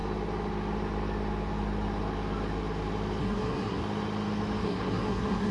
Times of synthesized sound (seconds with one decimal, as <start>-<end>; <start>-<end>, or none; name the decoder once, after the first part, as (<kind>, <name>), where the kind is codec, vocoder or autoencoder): 3.2-3.8 (codec, SNAC); 4.6-5.5